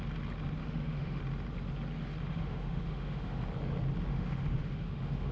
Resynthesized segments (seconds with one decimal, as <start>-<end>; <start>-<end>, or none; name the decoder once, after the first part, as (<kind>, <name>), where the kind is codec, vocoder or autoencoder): 0.6-1.2 (autoencoder, DAC-VAE); 2.3-3.4; 4.1-5.3